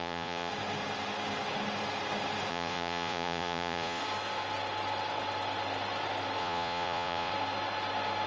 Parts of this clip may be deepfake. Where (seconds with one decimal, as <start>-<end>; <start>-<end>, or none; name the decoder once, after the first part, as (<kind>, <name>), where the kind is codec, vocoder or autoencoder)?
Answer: 0.0-0.5 (vocoder, Vocos); 2.5-4.0; 6.4-7.3